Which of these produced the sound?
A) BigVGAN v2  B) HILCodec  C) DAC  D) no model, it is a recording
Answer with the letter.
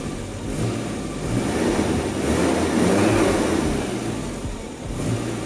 D